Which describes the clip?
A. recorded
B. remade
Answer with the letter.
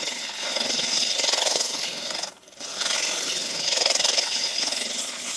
B